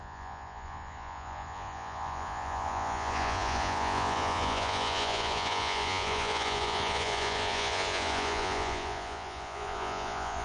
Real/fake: fake